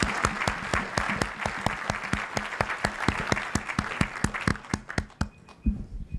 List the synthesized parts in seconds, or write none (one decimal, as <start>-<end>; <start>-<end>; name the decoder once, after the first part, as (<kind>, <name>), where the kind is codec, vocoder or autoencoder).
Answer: none